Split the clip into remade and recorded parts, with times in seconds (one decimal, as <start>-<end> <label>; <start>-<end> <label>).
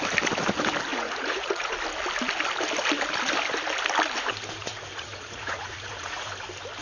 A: 0.0-0.9 recorded; 0.9-1.7 remade; 1.7-4.6 recorded; 4.6-6.3 remade; 6.3-6.8 recorded